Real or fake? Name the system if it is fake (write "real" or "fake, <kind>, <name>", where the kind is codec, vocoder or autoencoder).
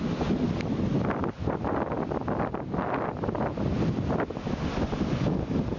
real